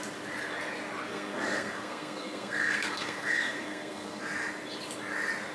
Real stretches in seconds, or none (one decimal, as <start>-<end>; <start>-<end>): 0.0-1.1; 4.2-5.5